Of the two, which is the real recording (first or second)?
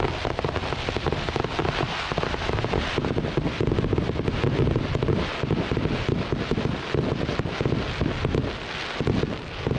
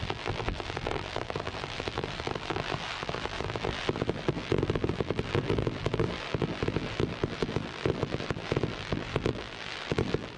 first